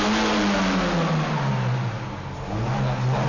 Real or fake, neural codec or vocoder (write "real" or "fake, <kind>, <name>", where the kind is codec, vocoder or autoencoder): real